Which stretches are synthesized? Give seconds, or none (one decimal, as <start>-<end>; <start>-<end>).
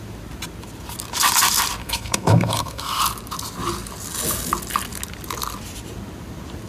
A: 1.8-3.0